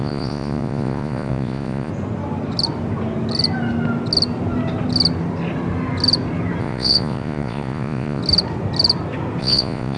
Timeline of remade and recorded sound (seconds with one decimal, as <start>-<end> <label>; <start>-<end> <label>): 0.0-1.9 remade; 1.9-6.6 recorded; 6.6-8.2 remade; 8.2-9.4 recorded; 9.4-10.0 remade